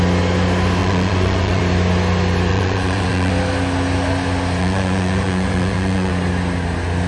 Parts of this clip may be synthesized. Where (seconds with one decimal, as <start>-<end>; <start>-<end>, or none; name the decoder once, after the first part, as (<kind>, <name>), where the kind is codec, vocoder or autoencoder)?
0.8-1.6 (vocoder, Vocos); 2.5-3.3; 4.6-6.1